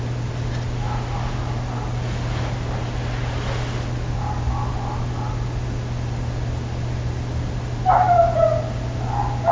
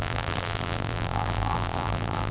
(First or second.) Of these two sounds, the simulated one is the second